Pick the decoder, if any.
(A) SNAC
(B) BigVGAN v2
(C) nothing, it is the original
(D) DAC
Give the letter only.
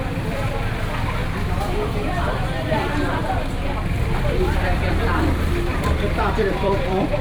B